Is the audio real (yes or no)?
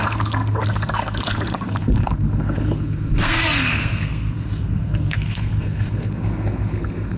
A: no